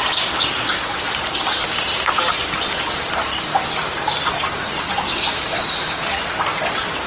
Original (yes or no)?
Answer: yes